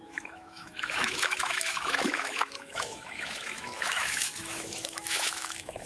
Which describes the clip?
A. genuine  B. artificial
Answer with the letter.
B